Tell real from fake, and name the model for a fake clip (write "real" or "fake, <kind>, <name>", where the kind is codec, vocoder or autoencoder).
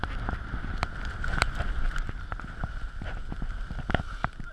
real